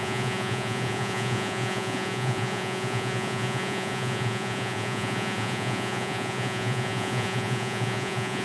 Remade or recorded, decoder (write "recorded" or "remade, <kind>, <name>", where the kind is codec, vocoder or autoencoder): remade, vocoder, Vocos